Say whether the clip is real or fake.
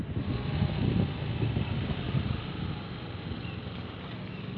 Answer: real